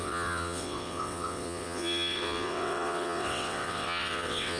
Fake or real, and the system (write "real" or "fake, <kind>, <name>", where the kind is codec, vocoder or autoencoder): fake, vocoder, WaveNeXt